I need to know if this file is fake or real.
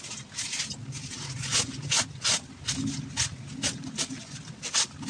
real